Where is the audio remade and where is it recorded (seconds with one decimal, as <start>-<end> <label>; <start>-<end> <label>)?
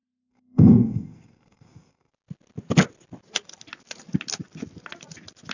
0.0-2.1 remade; 2.1-5.5 recorded